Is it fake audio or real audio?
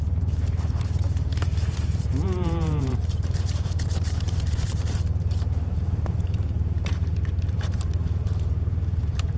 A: fake